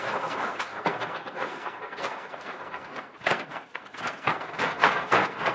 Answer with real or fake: fake